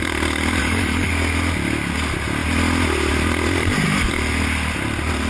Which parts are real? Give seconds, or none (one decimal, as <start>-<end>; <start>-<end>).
0.0-0.6; 1.1-5.3